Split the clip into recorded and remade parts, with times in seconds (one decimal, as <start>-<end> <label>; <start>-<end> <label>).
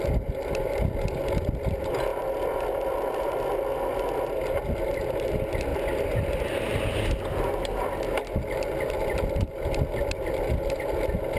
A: 0.0-11.4 recorded